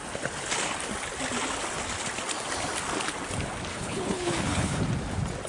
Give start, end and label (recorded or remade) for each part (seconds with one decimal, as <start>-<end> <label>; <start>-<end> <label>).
0.0-3.7 recorded; 3.7-4.8 remade; 4.8-5.5 recorded